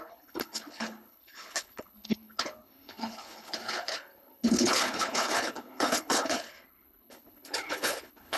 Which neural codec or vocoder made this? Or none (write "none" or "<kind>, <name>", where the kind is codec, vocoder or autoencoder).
codec, HILCodec